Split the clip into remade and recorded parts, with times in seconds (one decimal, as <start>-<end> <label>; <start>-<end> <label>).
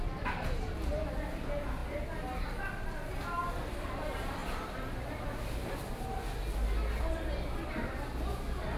0.0-4.4 recorded; 4.4-5.9 remade; 5.9-8.8 recorded